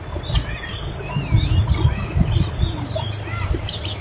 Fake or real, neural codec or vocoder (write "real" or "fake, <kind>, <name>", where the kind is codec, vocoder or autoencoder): fake, vocoder, BigVGAN v2